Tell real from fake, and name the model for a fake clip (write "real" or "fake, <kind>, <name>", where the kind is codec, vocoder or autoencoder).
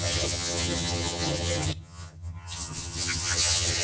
fake, vocoder, HiFi-GAN